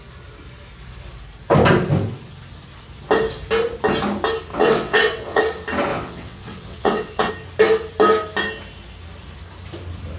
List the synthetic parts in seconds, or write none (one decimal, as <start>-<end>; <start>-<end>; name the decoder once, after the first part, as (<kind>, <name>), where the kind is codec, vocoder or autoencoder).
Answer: 4.5-5.4 (vocoder, WaveNeXt); 5.9-7.3